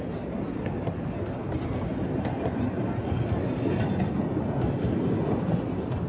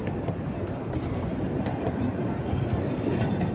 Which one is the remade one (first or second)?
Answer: second